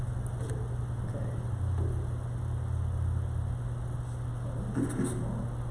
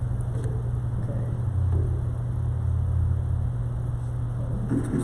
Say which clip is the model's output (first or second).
second